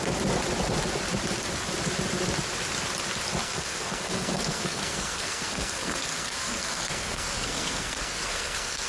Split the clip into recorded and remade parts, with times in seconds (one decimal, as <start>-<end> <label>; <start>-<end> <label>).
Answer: 0.0-3.4 recorded; 3.4-8.9 remade